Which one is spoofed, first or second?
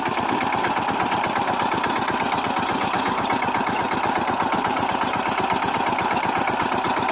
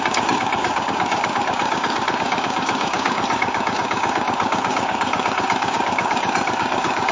second